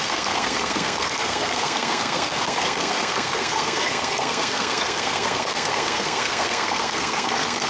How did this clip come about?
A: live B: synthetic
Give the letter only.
B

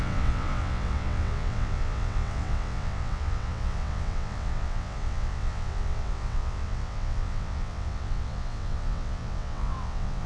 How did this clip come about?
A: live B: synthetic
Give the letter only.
B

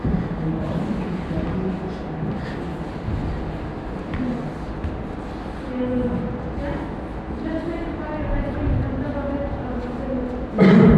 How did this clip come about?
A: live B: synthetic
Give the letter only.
A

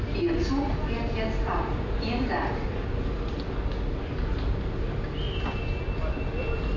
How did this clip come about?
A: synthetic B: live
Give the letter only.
B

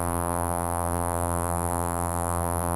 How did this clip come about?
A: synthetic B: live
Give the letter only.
A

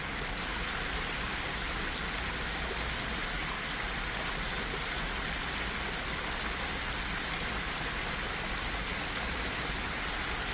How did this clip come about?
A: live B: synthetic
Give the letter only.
A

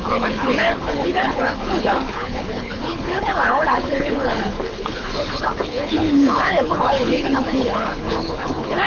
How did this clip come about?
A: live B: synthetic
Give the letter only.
B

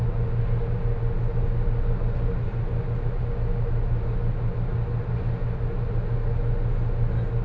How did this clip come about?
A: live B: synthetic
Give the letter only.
A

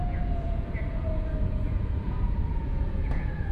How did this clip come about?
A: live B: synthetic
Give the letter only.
B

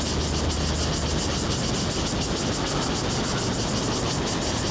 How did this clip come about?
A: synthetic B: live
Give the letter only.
B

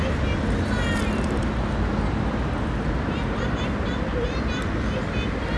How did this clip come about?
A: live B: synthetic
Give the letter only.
A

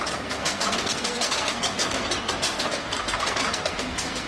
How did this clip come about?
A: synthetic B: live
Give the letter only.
A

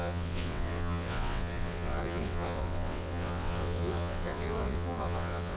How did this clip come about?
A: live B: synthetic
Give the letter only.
B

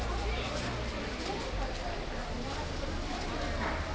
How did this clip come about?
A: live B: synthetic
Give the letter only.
B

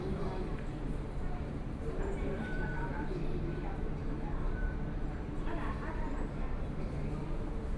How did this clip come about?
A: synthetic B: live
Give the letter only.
A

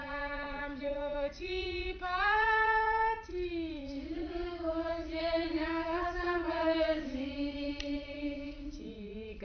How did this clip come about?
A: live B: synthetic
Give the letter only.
B